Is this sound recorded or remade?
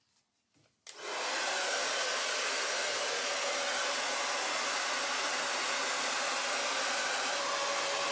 recorded